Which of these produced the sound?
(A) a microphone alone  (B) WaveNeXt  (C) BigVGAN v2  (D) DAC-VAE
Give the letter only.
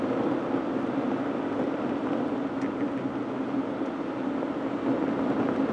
A